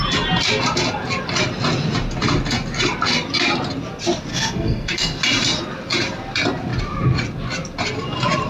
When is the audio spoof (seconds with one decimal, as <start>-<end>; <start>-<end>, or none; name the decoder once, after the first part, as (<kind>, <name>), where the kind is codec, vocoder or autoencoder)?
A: 4.3-5.2 (codec, SNAC)